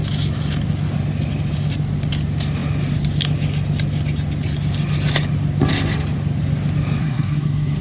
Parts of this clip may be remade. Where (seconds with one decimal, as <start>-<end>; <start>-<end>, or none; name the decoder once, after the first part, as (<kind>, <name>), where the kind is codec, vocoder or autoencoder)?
7.0-7.8 (codec, SNAC)